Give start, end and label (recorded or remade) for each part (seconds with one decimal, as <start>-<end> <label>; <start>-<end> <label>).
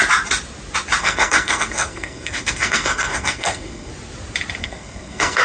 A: 0.0-1.0 recorded; 1.0-3.9 remade; 3.9-4.6 recorded; 4.6-5.4 remade